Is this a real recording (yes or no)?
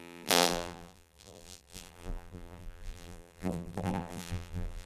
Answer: no